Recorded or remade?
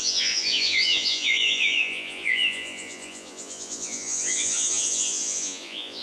remade